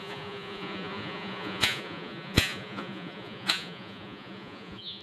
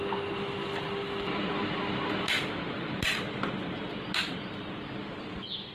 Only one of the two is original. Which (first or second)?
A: second